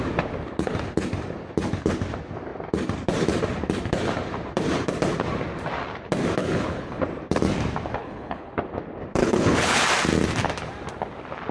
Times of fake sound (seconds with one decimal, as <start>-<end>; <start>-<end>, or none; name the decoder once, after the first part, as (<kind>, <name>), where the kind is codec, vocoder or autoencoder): 6.4-7.0 (codec, HILCodec); 8.0-8.5; 9.2-9.8